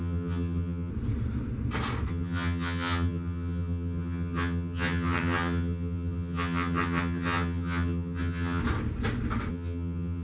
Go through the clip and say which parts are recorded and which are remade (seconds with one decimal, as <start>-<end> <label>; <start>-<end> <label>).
0.0-0.9 remade; 0.9-2.1 recorded; 2.1-8.6 remade; 8.6-9.5 recorded; 9.5-10.2 remade